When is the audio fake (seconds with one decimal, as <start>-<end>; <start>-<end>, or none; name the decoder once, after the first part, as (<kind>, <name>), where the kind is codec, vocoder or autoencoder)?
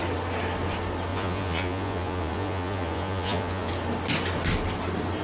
1.1-3.7 (vocoder, Vocos)